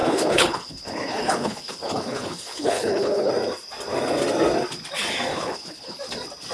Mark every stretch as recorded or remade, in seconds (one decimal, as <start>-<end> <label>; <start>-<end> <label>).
0.0-3.3 remade; 3.3-5.3 recorded; 5.3-6.0 remade; 6.0-6.5 recorded